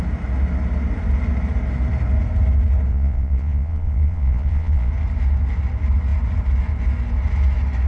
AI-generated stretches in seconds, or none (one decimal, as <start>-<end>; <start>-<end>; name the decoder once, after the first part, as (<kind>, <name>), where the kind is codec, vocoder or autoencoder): 2.9-4.9 (vocoder, Vocos)